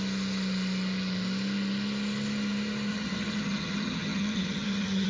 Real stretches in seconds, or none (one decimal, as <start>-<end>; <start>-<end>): 0.0-2.9